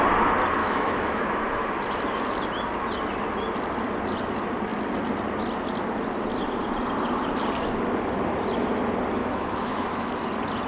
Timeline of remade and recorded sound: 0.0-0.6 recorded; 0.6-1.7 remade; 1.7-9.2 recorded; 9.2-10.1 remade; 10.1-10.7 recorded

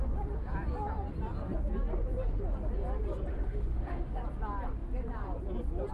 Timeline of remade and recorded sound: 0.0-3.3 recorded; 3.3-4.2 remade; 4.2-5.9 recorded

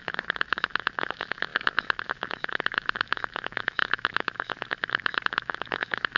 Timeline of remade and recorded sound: 0.0-6.2 remade

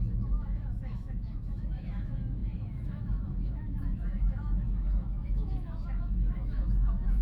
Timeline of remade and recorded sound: 0.0-7.2 remade